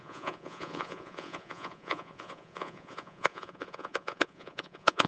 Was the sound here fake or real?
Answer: fake